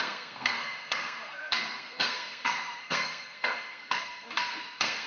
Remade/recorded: remade